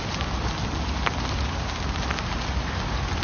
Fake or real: real